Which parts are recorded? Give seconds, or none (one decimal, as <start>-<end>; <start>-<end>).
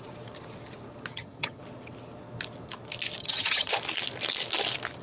0.0-1.1; 1.6-3.2; 3.7-5.0